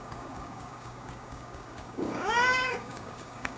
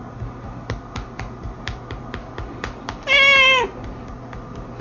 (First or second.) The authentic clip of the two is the second